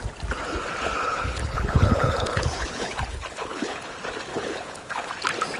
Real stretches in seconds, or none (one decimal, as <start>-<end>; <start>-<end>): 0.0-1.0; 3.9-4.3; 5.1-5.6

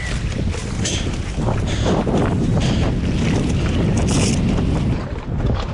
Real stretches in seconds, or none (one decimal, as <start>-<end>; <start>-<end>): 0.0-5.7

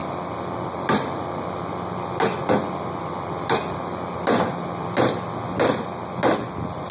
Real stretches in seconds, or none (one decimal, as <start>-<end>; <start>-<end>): 2.1-3.6; 4.1-6.9

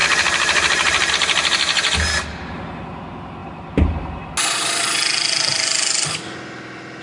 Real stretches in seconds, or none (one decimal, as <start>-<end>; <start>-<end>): 1.1-7.0

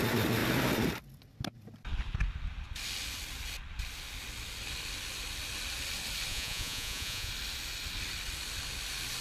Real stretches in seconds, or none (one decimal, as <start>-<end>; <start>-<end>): 0.0-6.3; 7.3-9.2